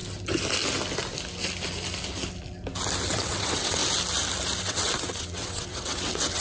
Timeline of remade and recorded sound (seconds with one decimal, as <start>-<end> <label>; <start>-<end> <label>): 0.0-3.1 recorded; 3.1-3.8 remade; 3.8-4.6 recorded; 4.6-6.4 remade